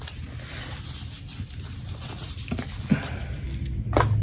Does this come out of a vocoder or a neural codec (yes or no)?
no